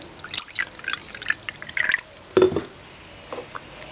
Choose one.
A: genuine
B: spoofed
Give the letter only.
A